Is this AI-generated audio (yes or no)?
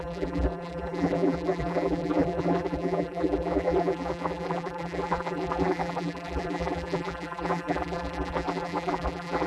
yes